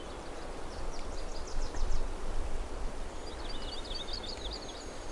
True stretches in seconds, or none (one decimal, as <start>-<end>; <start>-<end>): 0.0-5.1